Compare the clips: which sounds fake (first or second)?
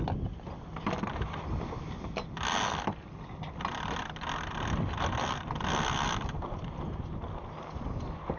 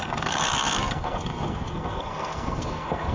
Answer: second